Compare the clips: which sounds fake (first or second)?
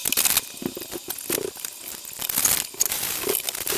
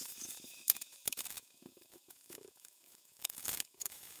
second